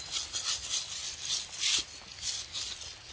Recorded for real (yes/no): yes